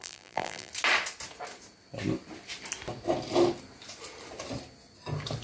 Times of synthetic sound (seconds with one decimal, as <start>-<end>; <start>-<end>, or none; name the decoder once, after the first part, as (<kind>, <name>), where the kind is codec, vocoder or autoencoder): 0.0-0.7 (vocoder, BigVGAN v2)